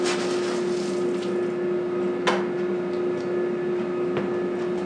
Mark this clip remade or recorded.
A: recorded